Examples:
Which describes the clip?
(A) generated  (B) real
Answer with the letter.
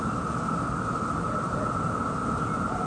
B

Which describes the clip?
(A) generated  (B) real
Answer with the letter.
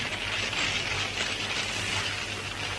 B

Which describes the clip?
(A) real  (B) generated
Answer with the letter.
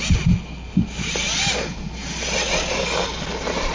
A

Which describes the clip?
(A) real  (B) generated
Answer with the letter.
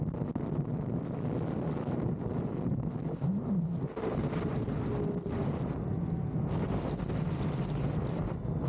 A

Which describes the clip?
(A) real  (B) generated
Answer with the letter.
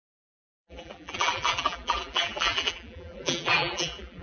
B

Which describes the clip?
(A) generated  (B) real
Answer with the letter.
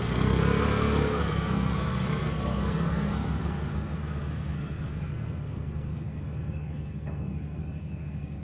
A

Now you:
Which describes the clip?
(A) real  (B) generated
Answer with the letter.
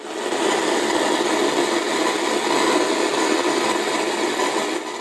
A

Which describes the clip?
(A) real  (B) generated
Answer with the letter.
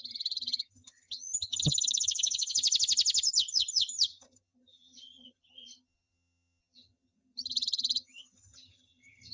B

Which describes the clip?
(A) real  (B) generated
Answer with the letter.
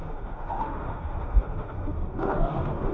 B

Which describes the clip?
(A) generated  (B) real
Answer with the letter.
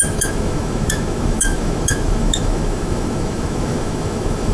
A